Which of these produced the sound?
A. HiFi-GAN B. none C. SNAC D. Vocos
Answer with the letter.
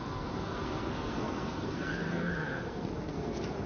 C